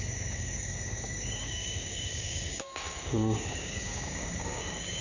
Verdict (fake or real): fake